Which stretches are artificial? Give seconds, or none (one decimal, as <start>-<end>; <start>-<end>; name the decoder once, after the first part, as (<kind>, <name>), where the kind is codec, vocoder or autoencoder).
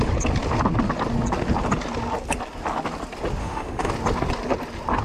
3.4-3.9 (autoencoder, DAC-VAE)